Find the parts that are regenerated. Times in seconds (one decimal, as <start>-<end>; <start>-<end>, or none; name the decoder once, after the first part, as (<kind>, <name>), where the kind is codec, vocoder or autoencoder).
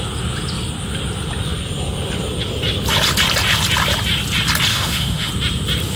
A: 4.7-5.3 (autoencoder, DAC-VAE)